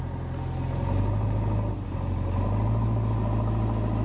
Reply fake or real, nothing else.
real